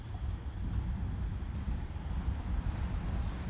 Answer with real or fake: real